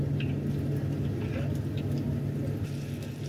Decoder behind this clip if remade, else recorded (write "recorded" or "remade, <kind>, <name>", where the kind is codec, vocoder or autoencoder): recorded